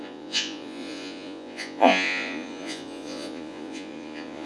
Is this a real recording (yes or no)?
no